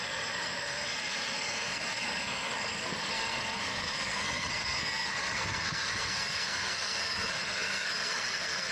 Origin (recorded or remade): remade